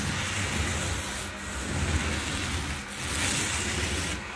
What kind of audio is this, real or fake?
real